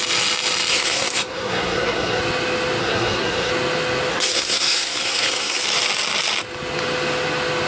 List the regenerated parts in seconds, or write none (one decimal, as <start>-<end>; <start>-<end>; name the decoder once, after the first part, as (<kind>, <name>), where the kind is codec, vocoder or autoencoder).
0.7-2.2 (codec, SNAC); 2.8-3.5; 4.1-5.6